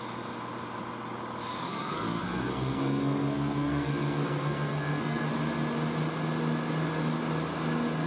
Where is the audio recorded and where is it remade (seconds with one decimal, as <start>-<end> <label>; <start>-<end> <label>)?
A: 0.0-1.6 recorded; 1.6-5.3 remade; 5.3-8.1 recorded